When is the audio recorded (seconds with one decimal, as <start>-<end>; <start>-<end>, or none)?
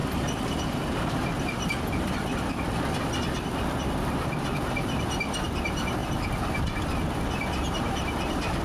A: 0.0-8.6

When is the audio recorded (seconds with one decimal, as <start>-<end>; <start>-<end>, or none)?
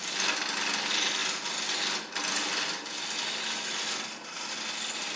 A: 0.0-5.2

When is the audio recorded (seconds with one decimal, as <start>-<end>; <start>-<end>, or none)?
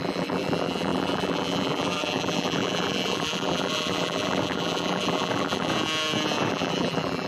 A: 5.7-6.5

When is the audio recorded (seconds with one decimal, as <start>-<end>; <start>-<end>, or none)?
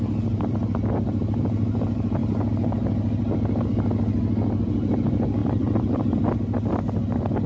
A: 0.0-5.4; 6.3-7.5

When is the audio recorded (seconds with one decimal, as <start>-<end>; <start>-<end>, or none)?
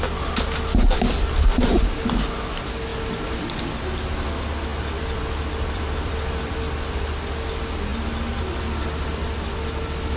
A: 0.0-2.9; 3.6-4.7; 7.2-10.2